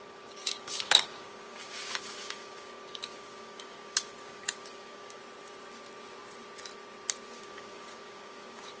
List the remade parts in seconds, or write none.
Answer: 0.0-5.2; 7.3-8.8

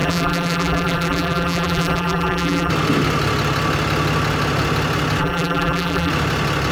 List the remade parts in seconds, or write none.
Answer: 0.0-2.7; 5.2-6.1

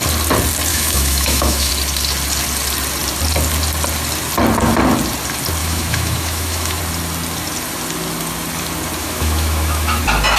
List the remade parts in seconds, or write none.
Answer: 0.7-1.7; 5.6-6.8; 9.0-10.0

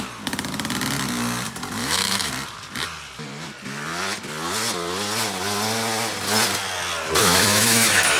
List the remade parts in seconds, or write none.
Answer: 1.8-2.3; 7.2-8.2

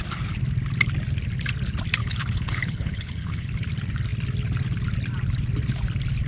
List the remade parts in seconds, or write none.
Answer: 2.0-3.5

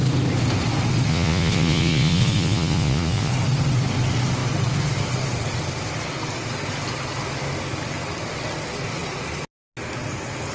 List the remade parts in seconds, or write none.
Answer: 1.1-3.3

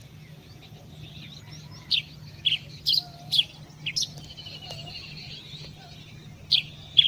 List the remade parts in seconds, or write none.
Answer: 3.1-3.9